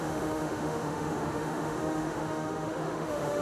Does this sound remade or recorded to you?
remade